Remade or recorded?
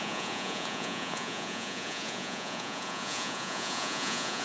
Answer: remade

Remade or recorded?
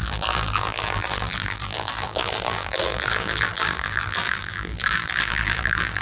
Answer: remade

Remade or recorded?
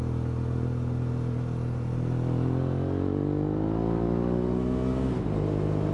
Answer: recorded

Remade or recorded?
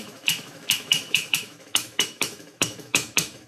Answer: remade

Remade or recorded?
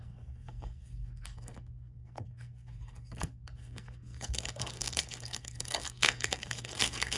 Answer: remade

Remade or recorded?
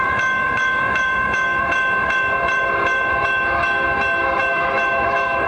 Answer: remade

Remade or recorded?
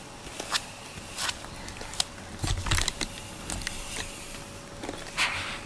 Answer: recorded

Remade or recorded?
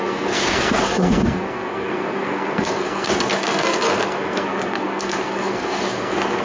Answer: remade